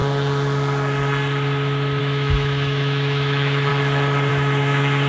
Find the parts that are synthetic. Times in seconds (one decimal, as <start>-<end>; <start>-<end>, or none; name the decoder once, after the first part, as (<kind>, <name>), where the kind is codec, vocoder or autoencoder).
2.0-3.7 (autoencoder, DAC-VAE); 4.3-5.1